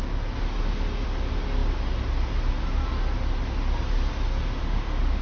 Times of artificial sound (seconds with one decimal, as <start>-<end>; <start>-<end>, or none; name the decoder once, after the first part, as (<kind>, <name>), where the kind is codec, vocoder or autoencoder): 4.6-5.2 (autoencoder, DAC-VAE)